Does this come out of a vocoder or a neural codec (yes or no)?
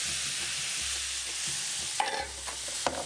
no